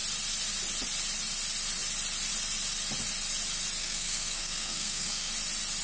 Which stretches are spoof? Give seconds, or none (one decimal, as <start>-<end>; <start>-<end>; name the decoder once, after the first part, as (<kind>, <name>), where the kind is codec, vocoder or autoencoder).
3.8-5.3 (codec, SNAC)